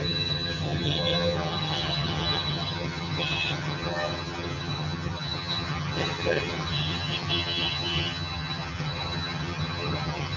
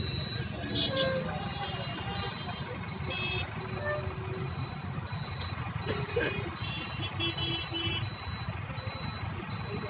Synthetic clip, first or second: first